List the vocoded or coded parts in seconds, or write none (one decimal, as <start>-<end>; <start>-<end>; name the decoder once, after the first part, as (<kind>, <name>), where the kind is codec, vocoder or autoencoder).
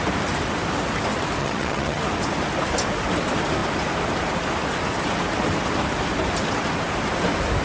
1.4-2.0 (vocoder, HiFi-GAN)